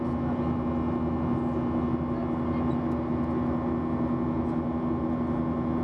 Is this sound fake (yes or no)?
no